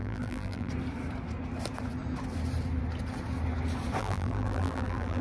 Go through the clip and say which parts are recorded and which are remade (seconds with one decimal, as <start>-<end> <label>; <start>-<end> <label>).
0.0-0.7 remade; 0.7-4.0 recorded; 4.0-5.2 remade